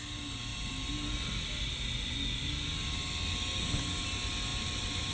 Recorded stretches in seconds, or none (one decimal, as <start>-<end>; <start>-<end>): 0.0-4.5